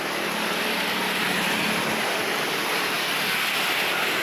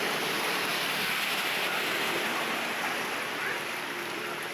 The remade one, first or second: second